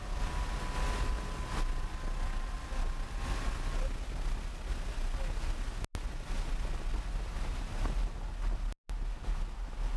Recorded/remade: recorded